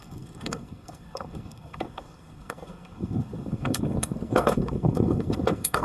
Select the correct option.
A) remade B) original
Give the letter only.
A